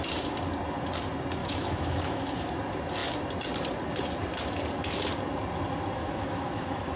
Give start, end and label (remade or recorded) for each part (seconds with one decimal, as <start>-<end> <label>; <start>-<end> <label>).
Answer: 0.0-1.4 recorded; 1.4-2.2 remade; 2.2-6.0 recorded; 6.0-7.0 remade